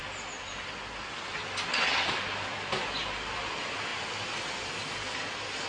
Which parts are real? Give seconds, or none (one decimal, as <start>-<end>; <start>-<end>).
0.0-5.7